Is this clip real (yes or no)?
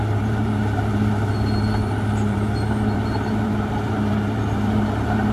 no